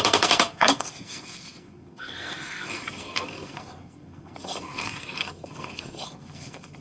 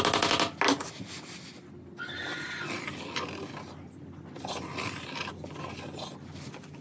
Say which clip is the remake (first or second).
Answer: first